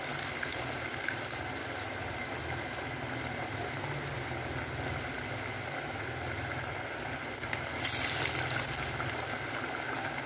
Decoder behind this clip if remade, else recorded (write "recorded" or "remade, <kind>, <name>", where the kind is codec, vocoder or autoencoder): recorded